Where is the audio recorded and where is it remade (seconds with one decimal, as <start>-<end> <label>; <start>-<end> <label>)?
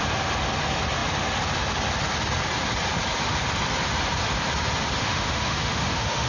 0.0-5.0 recorded; 5.0-6.3 remade